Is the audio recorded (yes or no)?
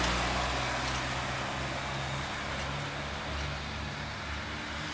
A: yes